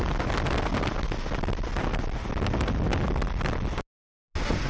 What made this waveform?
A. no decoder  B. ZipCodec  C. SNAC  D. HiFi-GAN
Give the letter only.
A